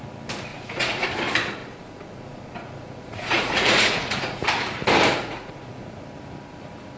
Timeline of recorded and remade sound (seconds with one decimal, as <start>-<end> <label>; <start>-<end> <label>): 0.0-0.5 recorded; 0.5-1.1 remade; 1.1-1.6 recorded; 1.6-4.4 remade; 4.4-5.2 recorded; 5.2-6.0 remade; 6.0-7.0 recorded